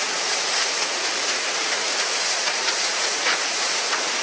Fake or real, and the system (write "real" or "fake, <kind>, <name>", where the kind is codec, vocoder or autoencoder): fake, vocoder, Vocos